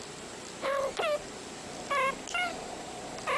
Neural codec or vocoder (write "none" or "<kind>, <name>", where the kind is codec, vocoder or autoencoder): none